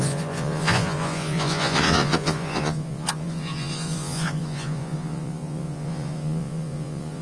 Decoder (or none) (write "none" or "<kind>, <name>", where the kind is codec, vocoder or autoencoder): vocoder, Vocos